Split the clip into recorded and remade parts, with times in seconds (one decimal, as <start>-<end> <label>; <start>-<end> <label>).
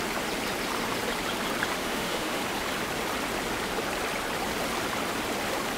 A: 0.0-1.8 recorded; 1.8-2.4 remade; 2.4-5.8 recorded